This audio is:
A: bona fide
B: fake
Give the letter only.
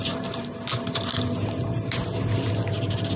A